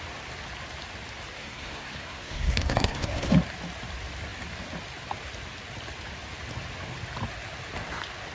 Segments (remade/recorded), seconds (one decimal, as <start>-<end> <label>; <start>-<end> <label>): 0.0-1.4 recorded; 1.4-3.3 remade; 3.3-8.3 recorded